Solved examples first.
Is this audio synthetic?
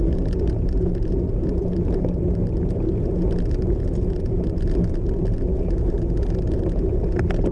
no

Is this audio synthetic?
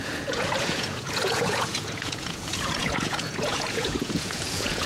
yes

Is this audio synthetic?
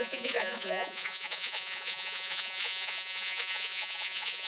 yes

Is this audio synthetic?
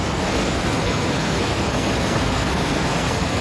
yes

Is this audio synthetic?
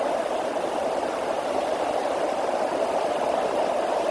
no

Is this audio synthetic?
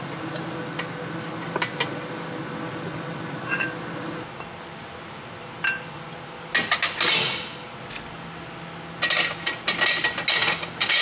no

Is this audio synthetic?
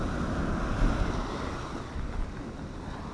no